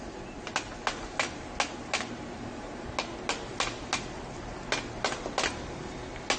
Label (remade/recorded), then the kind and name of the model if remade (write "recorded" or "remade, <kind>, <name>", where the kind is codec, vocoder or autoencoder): recorded